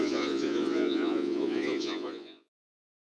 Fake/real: fake